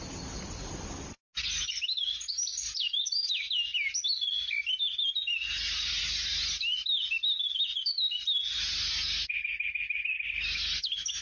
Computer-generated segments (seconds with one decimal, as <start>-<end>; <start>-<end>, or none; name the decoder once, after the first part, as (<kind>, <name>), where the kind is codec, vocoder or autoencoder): none